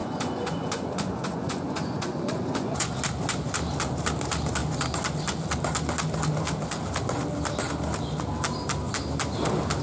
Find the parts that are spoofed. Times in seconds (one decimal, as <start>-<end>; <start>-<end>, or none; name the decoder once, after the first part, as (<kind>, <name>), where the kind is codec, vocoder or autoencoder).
0.0-2.9 (vocoder, Vocos)